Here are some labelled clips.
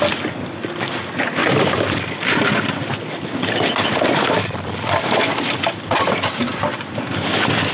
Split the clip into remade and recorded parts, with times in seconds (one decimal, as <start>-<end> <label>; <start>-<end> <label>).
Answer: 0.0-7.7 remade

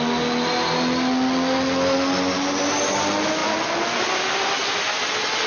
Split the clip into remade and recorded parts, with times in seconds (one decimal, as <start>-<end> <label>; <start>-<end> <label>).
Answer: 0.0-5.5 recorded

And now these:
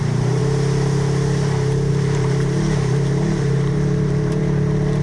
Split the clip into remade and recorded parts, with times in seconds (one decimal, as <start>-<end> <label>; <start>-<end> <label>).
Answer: 0.0-0.4 remade; 0.4-1.9 recorded; 1.9-5.0 remade